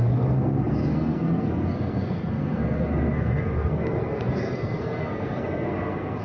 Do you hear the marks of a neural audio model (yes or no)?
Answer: yes